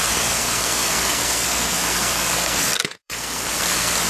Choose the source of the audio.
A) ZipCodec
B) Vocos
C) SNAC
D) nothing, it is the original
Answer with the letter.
C